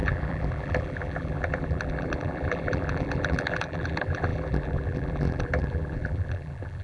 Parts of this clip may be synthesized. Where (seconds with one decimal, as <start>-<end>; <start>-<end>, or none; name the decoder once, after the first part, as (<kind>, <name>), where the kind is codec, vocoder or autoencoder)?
0.0-6.8 (vocoder, BigVGAN v2)